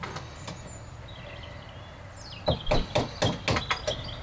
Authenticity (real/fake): real